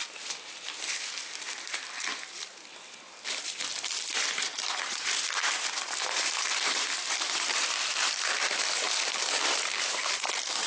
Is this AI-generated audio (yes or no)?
yes